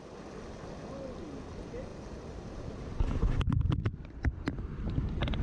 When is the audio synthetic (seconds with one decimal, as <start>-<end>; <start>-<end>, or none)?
1.9-4.7